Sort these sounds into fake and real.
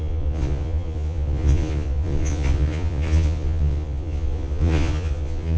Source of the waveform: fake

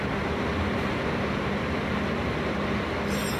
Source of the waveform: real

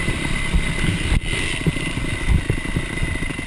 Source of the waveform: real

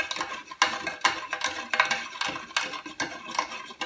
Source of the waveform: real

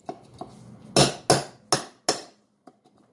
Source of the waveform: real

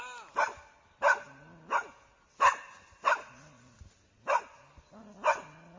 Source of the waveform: real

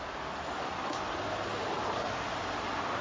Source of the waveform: real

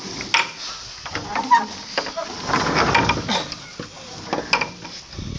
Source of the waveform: real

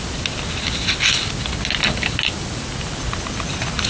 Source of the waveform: real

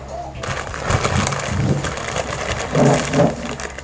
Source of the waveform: real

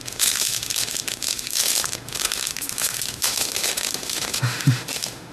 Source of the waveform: fake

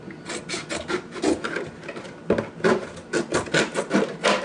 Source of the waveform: real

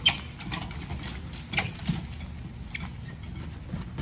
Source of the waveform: real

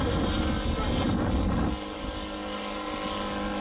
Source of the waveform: real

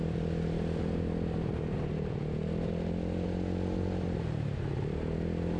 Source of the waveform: real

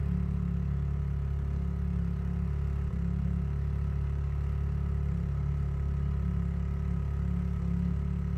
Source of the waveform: fake